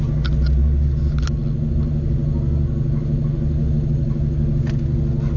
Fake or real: real